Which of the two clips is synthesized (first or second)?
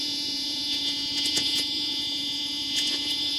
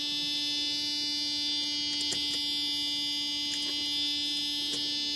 first